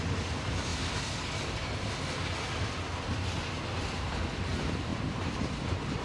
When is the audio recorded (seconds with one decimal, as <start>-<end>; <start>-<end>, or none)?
0.7-3.9